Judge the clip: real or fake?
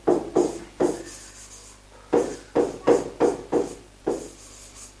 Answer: real